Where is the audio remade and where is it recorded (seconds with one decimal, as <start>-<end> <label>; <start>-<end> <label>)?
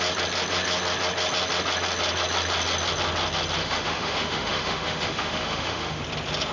0.0-3.6 recorded; 3.6-6.0 remade; 6.0-6.5 recorded